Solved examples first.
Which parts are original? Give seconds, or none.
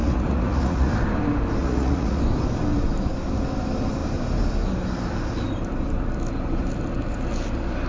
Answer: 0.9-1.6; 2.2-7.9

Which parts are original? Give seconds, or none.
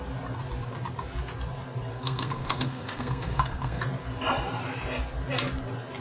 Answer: 0.0-1.9; 3.8-6.0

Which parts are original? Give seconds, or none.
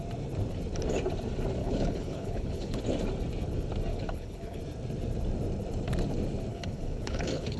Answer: 0.0-1.6; 2.8-3.9; 4.6-6.5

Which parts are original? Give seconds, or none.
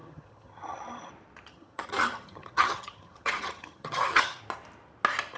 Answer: 1.1-1.5; 4.4-5.4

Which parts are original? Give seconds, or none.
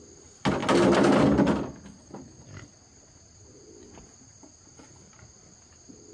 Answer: 0.0-6.1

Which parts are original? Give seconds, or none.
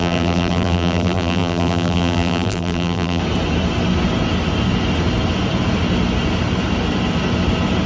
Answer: 3.2-7.9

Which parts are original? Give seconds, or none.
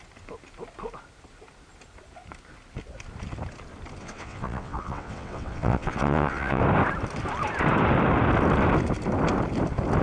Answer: 0.0-4.0; 6.6-10.0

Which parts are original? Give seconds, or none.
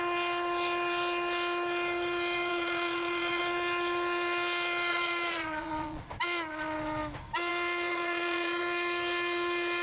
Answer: 0.0-2.5; 3.4-4.9; 6.0-7.9; 8.6-9.8